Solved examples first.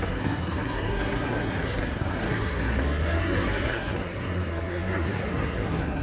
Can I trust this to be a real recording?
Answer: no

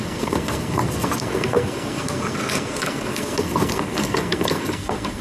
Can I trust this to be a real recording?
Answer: no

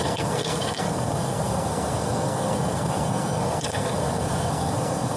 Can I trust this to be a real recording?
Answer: no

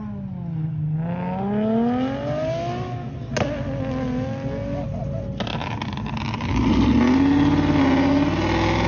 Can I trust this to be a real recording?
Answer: yes